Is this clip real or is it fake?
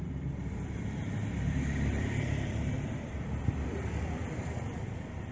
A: fake